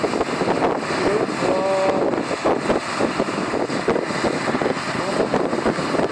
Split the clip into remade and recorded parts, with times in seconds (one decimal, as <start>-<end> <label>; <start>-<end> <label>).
0.0-6.1 recorded